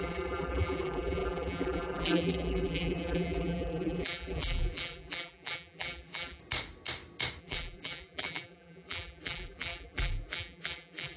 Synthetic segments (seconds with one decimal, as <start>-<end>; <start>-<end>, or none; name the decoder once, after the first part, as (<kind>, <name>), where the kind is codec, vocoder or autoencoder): 0.0-6.4 (vocoder, BigVGAN v2); 7.4-11.2